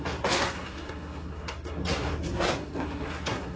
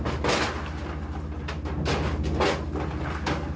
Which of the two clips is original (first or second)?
second